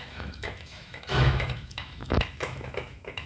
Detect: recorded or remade remade